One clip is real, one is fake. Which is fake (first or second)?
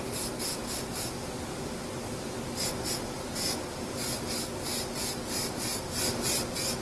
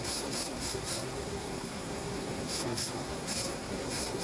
second